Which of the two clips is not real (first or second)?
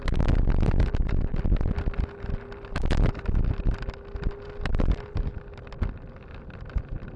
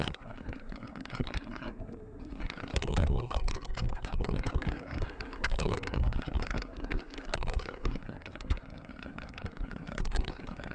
second